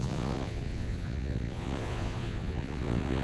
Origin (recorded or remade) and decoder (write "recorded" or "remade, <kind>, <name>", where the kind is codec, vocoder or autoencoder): remade, vocoder, Vocos